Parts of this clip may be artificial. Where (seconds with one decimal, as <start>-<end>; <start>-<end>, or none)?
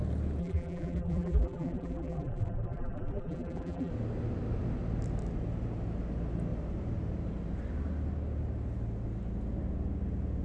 0.4-3.9